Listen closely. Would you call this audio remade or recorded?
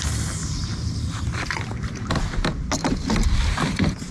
recorded